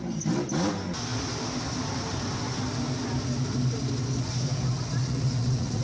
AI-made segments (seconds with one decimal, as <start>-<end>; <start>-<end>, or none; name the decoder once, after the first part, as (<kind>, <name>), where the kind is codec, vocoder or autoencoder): 5.0-5.8 (vocoder, Vocos)